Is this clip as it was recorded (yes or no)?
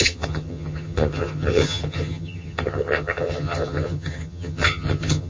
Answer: no